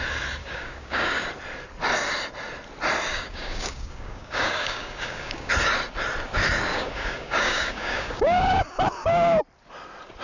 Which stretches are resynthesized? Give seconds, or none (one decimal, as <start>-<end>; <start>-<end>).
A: 0.4-1.2; 3.1-5.5; 6.7-9.4